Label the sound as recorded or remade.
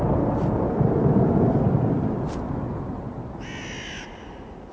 recorded